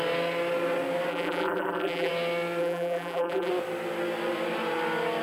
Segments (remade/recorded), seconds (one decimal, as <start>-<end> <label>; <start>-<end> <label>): 0.0-1.1 recorded; 1.1-2.1 remade; 2.1-2.6 recorded; 2.6-3.5 remade; 3.5-5.2 recorded